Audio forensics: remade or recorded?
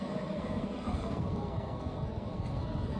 remade